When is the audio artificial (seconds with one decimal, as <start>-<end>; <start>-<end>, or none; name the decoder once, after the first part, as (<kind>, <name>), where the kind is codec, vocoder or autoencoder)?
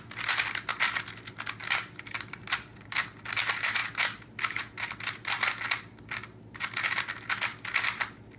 none